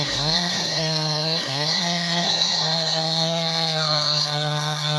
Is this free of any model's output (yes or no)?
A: no